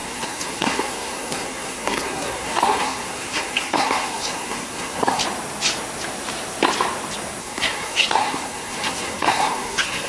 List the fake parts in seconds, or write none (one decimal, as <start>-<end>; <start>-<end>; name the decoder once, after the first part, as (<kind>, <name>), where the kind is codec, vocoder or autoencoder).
0.0-5.2 (codec, SNAC); 7.4-10.1

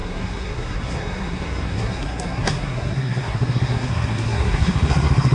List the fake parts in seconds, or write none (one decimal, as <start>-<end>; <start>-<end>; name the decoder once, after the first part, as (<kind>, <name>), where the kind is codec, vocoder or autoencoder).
0.0-5.3 (codec, SNAC)

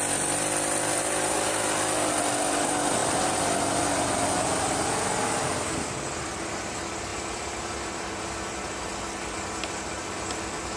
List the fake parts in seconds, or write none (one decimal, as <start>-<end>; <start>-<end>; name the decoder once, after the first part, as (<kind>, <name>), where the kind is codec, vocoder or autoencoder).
none

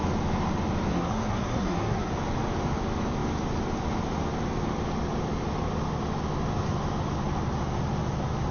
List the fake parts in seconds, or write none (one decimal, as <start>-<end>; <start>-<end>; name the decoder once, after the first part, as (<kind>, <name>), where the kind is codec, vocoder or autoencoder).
0.9-2.1 (codec, SNAC)

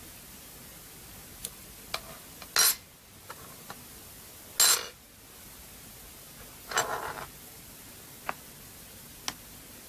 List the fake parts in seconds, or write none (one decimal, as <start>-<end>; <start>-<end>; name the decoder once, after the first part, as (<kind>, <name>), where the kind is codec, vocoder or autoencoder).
none

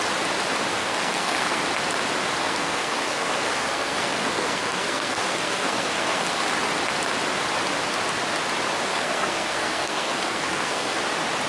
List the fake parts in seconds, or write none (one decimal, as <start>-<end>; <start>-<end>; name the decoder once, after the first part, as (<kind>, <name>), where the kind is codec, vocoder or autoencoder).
0.7-1.6 (codec, SNAC); 2.4-6.4; 8.9-11.0